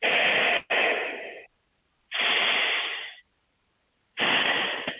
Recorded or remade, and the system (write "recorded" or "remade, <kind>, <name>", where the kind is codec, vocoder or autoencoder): remade, vocoder, BigVGAN v2